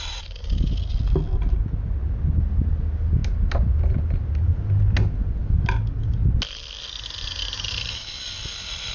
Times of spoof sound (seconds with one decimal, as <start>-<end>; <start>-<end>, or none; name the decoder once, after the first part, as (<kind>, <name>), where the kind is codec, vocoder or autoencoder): none